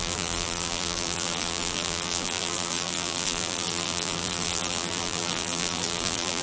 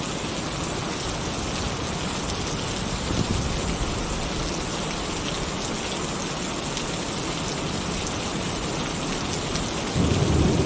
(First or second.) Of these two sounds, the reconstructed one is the first